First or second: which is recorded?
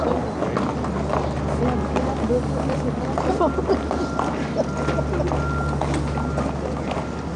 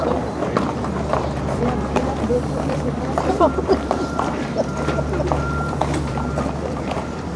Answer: first